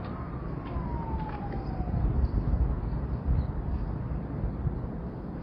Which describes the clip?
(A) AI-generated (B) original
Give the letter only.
B